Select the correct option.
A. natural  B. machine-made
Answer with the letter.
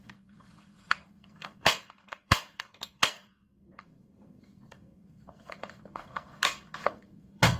B